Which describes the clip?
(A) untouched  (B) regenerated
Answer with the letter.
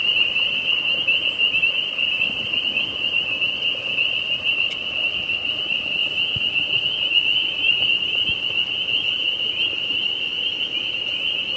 A